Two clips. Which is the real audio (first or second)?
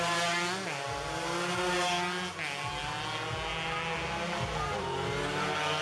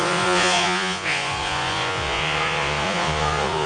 first